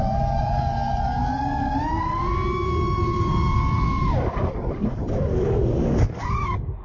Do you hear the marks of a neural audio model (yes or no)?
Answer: yes